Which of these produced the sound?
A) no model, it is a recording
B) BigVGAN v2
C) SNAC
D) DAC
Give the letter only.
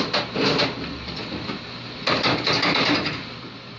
A